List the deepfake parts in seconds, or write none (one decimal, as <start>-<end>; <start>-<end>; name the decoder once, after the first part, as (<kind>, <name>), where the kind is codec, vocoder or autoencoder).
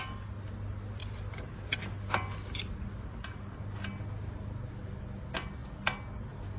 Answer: none